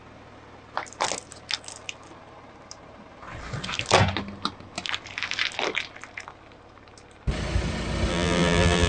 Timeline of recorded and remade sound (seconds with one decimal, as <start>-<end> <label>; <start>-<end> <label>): 0.0-8.1 recorded; 8.1-8.9 remade